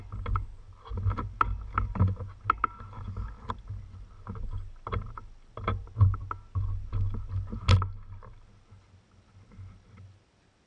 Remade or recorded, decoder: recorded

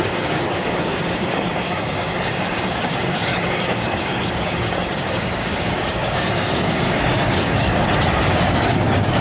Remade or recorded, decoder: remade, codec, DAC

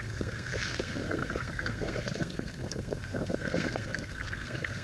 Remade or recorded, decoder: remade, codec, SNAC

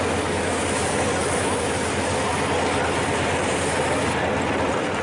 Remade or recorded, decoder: recorded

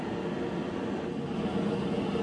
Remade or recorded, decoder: recorded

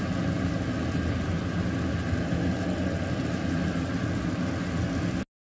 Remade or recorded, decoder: recorded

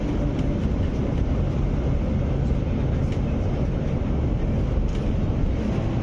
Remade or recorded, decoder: recorded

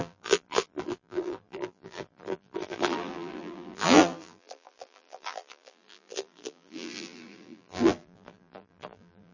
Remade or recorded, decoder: remade, vocoder, BigVGAN v2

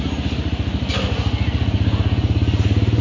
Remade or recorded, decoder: recorded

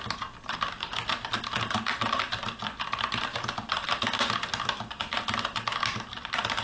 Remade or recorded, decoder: recorded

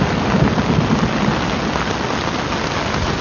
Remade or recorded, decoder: recorded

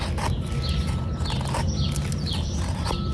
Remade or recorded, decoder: remade, vocoder, BigVGAN v2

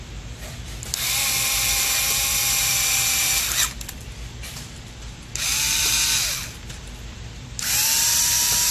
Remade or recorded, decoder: remade, vocoder, BigVGAN v2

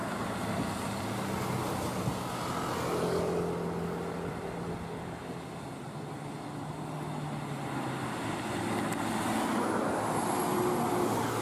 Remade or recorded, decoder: recorded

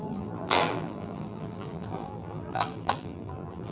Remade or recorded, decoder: remade, vocoder, BigVGAN v2